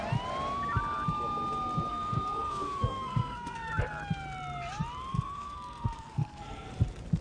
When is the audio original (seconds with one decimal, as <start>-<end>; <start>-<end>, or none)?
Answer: 0.0-1.9; 3.7-5.1; 6.7-7.2

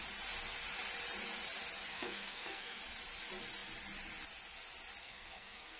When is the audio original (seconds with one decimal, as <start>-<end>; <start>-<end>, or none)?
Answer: 0.0-1.9; 2.8-5.0

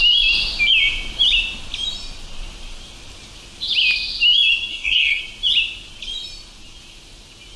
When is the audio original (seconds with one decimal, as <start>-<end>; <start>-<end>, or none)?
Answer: 0.0-4.7; 5.2-7.6

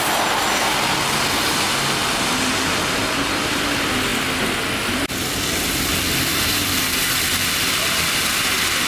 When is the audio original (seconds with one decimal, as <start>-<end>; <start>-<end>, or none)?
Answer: 0.0-8.9

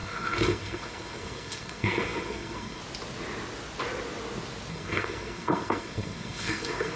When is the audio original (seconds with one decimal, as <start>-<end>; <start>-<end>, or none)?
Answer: 2.8-4.7

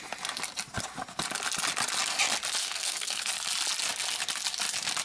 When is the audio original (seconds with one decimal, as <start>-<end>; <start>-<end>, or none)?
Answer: 0.0-2.6; 3.3-5.0